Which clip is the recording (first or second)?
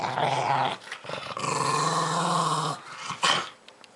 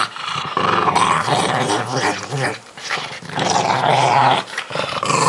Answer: first